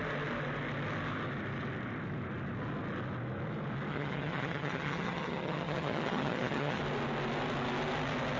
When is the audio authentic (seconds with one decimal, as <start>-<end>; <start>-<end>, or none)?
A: 0.0-3.9; 6.8-8.4